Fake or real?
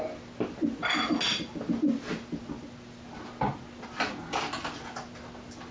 real